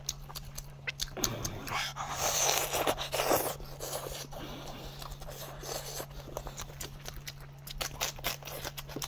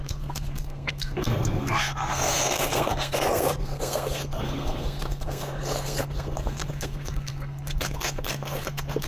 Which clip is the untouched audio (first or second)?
first